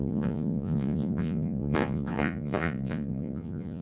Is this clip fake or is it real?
fake